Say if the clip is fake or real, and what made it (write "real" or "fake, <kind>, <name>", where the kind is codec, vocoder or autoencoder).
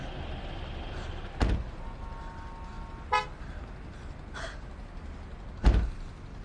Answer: real